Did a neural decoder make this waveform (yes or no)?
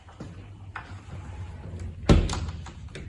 no